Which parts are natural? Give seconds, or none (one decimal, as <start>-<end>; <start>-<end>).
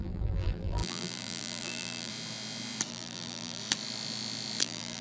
2.1-2.9; 3.6-4.6